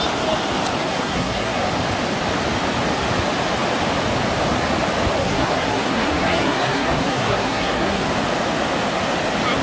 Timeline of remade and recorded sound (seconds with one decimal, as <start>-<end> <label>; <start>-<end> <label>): 0.0-0.9 recorded; 0.9-1.7 remade; 1.7-5.2 recorded; 5.2-8.0 remade; 8.0-9.6 recorded